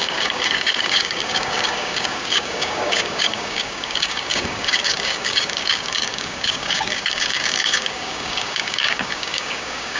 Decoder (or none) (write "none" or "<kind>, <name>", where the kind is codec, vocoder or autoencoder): codec, DAC